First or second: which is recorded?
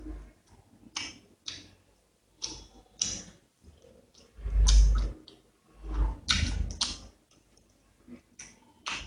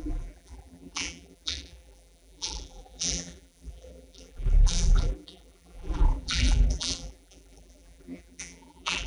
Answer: first